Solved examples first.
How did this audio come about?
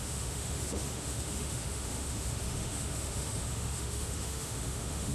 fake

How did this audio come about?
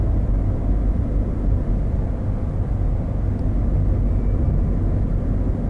real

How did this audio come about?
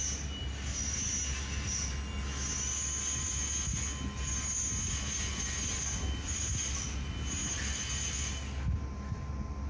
real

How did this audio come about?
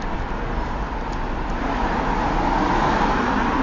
real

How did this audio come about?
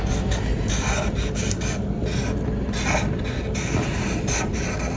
real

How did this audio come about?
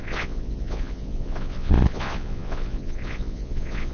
fake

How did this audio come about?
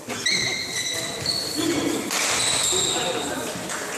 real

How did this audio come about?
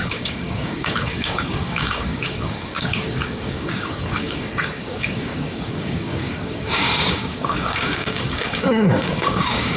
fake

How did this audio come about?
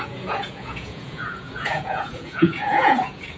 fake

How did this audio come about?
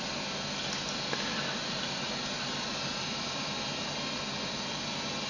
real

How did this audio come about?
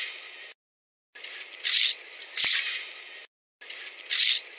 real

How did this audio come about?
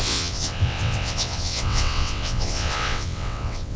fake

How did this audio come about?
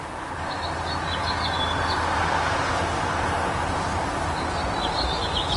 real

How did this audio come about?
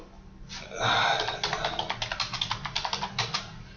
real